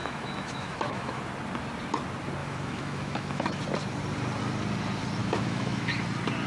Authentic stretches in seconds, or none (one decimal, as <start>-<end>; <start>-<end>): 1.2-2.4; 3.6-5.2; 5.9-6.5

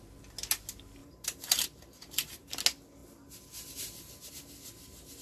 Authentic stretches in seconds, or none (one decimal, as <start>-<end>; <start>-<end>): 0.0-1.0; 2.5-5.2

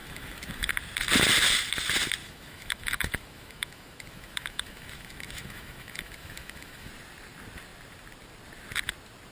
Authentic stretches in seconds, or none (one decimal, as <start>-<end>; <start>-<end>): 0.7-2.2; 6.9-9.3

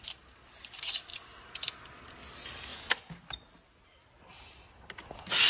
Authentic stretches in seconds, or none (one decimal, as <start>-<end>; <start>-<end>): 0.0-2.7; 3.2-5.5

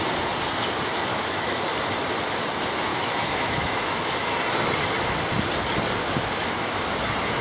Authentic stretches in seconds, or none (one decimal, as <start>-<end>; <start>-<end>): 0.0-1.1; 1.6-2.9; 4.3-6.0; 6.8-7.4

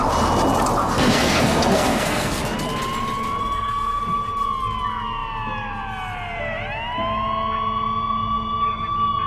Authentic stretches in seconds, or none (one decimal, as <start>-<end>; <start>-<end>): 0.0-0.8; 2.4-3.4; 4.0-9.3

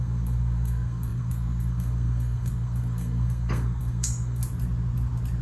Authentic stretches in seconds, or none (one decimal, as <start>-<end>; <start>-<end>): 4.4-5.4

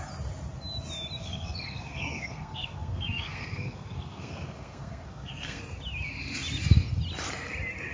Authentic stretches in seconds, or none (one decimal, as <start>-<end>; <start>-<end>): 0.0-1.2; 5.6-7.9